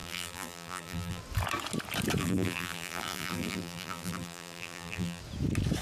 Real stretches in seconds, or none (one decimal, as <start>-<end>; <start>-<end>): 1.2-2.2; 5.2-5.8